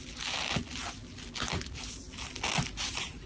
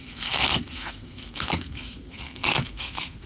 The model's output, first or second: second